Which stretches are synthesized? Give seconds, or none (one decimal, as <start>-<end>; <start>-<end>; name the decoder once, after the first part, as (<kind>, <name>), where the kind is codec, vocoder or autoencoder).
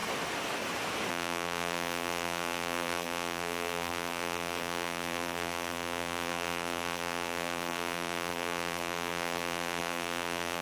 1.1-10.6 (vocoder, BigVGAN v2)